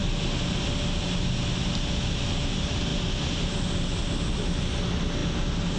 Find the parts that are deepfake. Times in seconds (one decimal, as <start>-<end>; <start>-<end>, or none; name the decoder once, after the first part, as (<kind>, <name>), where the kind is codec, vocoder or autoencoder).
none